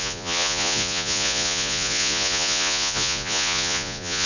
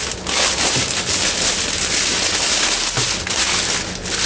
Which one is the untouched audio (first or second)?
second